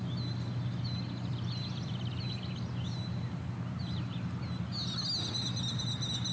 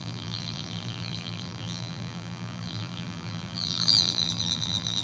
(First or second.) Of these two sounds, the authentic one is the first